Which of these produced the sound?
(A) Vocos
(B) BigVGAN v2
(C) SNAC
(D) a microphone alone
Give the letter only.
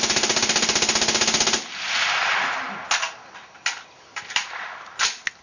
D